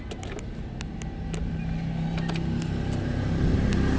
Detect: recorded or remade recorded